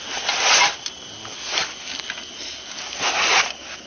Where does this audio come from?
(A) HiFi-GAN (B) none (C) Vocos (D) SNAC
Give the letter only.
B